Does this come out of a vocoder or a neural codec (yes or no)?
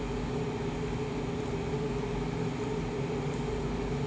no